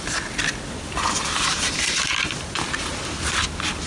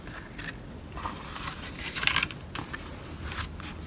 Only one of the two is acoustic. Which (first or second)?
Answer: second